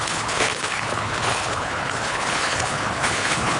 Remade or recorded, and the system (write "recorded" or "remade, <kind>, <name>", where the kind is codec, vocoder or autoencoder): remade, codec, HILCodec